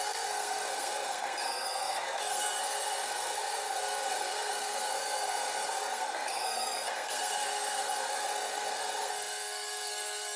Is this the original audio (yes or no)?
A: no